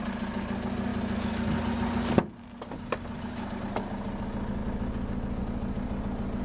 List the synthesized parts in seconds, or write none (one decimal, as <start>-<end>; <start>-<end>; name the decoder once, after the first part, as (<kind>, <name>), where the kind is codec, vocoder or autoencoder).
none